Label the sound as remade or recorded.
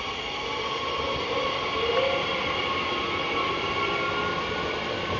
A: recorded